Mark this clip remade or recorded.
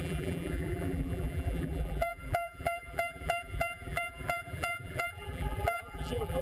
remade